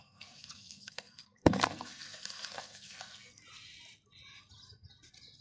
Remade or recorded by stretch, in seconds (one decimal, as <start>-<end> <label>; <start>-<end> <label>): 0.0-3.4 remade; 3.4-5.4 recorded